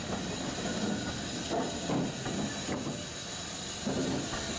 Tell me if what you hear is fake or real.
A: real